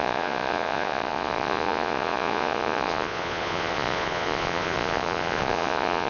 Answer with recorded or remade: remade